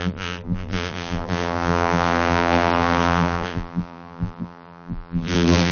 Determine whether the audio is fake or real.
fake